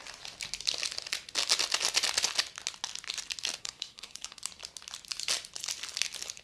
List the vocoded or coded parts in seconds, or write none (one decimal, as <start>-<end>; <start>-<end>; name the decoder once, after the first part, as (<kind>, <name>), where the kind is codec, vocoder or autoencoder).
3.6-4.4 (codec, SNAC)